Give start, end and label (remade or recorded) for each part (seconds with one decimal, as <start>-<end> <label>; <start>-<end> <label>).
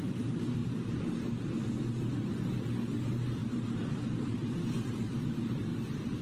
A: 0.0-0.6 remade; 0.6-2.8 recorded; 2.8-5.7 remade; 5.7-6.2 recorded